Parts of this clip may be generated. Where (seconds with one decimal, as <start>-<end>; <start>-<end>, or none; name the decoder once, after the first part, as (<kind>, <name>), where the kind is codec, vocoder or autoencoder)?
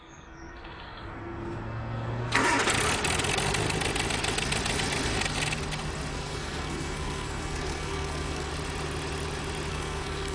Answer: 0.0-2.4 (codec, SNAC); 6.1-8.5; 9.7-10.3